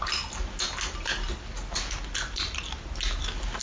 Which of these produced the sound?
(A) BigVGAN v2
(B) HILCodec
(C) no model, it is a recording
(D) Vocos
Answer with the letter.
C